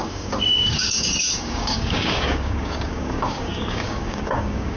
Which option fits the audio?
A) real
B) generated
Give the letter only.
B